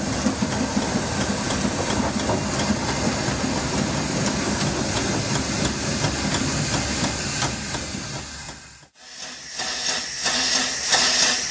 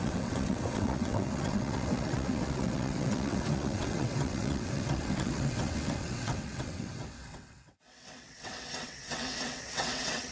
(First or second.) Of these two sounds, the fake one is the second